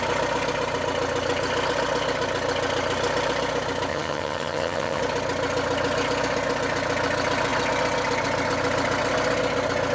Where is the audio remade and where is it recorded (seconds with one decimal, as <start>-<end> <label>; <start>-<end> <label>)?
0.0-3.9 recorded; 3.9-5.0 remade; 5.0-9.9 recorded